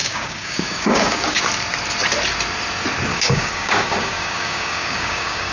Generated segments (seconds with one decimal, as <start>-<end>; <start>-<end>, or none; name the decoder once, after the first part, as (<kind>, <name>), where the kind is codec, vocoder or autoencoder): 0.0-1.4 (codec, DAC); 3.1-5.5